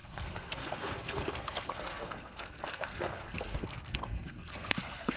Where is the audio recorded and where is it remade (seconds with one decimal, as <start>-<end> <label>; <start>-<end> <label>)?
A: 0.0-5.2 remade